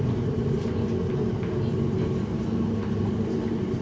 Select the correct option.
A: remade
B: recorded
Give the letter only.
B